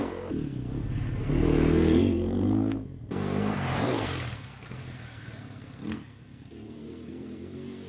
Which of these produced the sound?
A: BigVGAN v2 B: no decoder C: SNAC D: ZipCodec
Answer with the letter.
C